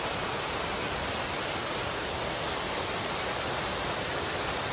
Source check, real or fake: real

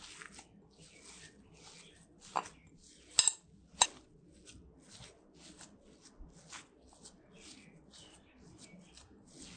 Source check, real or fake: real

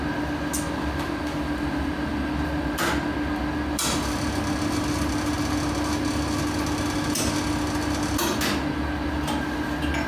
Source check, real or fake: real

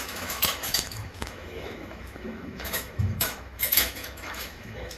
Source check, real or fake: fake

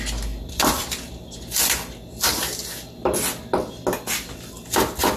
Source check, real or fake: real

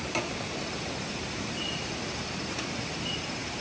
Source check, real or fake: real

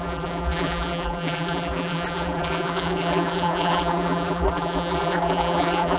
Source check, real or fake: fake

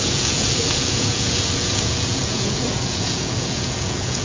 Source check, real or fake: fake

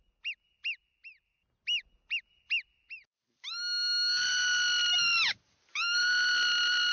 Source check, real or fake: real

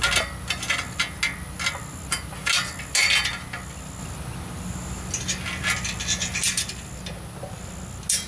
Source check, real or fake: real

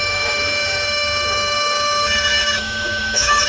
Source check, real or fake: fake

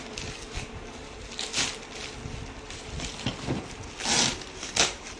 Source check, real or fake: real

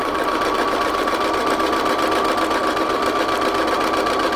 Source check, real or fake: fake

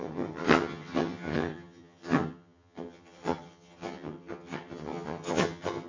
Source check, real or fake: fake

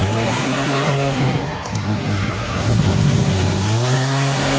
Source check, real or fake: fake